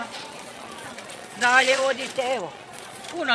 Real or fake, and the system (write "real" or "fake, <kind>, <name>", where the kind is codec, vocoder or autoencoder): fake, vocoder, Vocos